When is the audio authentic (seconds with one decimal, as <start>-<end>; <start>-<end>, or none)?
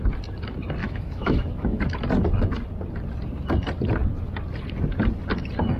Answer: 0.0-0.8; 1.8-5.8